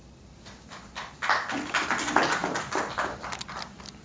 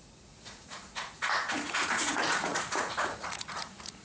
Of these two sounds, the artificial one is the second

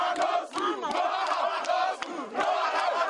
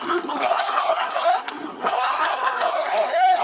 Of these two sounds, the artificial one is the second